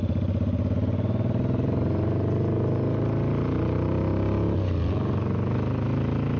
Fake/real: real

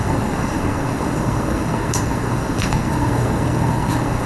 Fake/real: fake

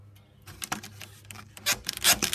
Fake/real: real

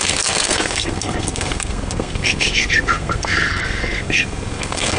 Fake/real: fake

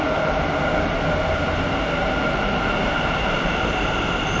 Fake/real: fake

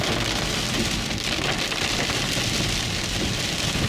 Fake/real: real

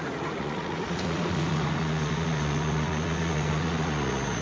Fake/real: fake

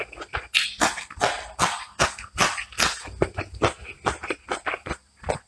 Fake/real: real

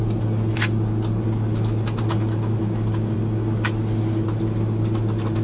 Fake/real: real